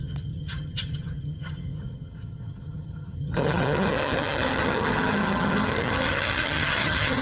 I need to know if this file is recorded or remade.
remade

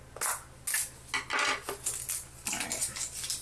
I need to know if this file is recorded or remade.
recorded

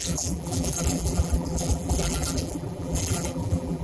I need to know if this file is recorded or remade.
remade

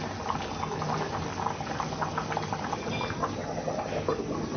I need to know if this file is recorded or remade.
recorded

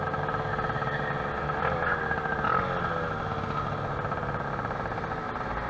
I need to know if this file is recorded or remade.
recorded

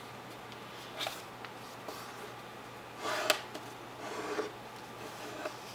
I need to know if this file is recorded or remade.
recorded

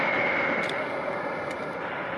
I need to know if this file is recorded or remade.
recorded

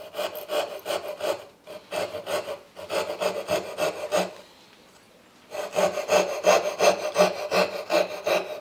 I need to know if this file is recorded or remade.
recorded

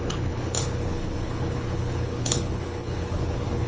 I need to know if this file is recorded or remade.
remade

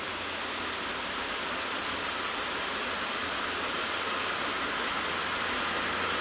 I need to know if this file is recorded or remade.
remade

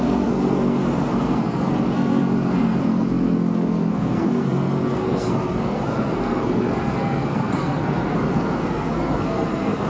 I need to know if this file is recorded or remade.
remade